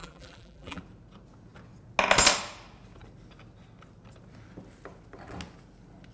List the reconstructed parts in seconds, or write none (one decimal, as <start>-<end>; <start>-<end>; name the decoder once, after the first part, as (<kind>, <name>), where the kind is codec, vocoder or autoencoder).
0.0-0.8 (vocoder, BigVGAN v2)